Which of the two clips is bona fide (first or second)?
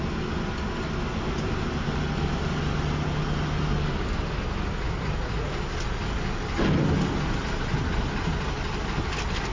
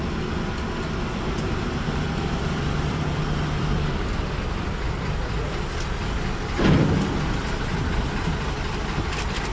first